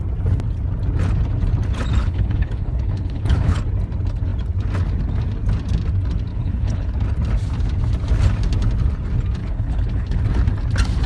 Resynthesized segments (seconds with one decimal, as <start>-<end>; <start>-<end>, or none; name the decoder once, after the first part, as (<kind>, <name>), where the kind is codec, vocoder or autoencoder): 2.0-3.6 (codec, HILCodec); 6.3-6.9; 9.4-10.2